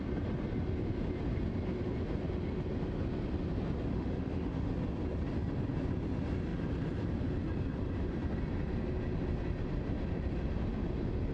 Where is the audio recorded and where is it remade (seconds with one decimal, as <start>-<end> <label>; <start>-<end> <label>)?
0.0-3.9 recorded; 3.9-4.7 remade; 4.7-11.3 recorded